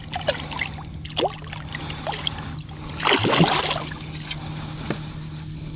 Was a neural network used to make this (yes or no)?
no